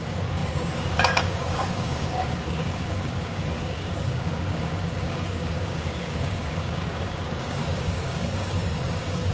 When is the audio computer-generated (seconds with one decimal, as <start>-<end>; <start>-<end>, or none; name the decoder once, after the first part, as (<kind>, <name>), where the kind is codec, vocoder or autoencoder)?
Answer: 0.0-9.3 (codec, DAC)